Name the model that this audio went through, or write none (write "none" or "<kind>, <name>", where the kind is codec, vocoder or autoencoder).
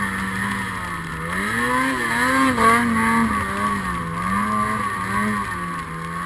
none